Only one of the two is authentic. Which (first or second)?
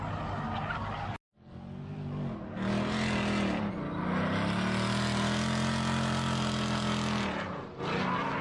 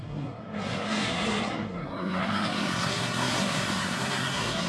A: first